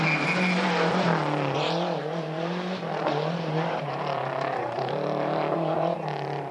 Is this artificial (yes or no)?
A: yes